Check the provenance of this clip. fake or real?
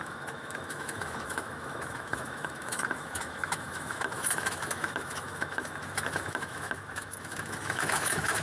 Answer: fake